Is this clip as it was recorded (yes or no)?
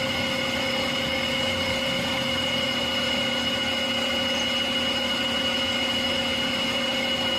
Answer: yes